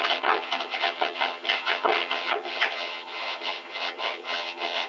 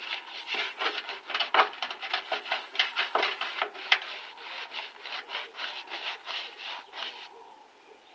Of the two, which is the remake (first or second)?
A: first